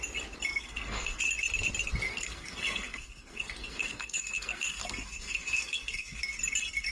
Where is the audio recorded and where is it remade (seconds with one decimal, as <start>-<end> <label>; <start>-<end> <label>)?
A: 0.0-0.5 recorded; 0.5-1.2 remade; 1.2-2.1 recorded; 2.1-6.2 remade; 6.2-6.9 recorded